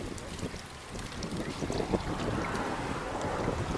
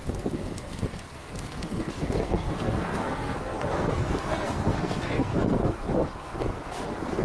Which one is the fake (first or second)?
second